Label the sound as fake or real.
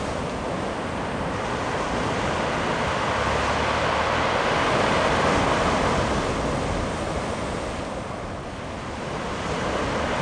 real